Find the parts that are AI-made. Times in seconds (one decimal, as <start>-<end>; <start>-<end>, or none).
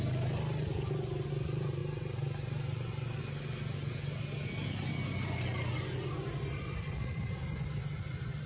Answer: none